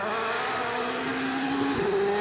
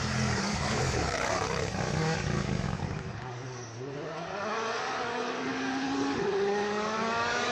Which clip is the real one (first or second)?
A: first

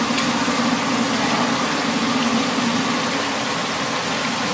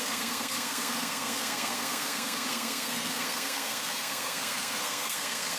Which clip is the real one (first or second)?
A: first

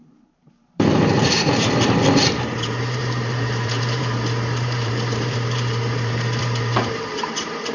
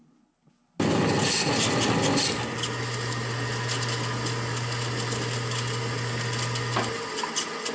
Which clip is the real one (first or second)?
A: second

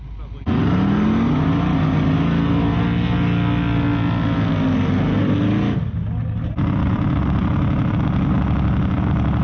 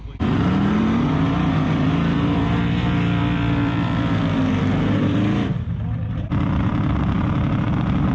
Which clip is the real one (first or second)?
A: first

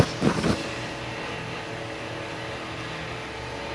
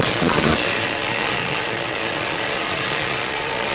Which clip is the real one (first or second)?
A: first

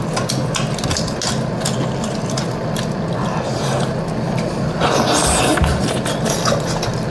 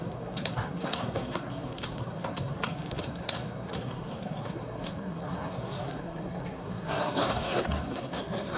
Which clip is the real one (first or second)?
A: first